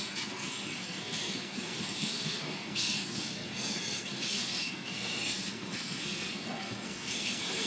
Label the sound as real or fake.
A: fake